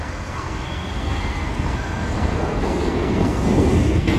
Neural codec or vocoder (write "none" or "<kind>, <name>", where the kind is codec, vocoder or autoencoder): codec, SNAC